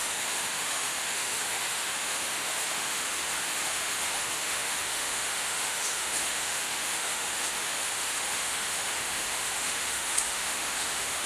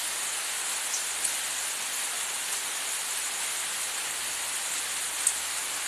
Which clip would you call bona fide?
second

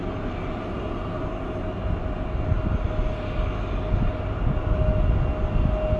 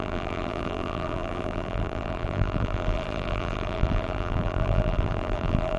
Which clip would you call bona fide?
first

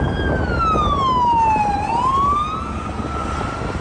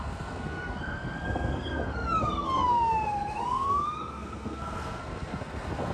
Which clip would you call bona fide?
first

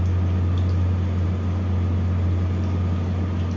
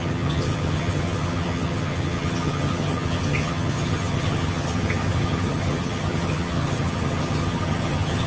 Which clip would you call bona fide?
first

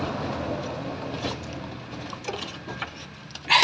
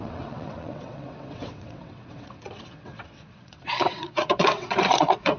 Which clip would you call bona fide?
first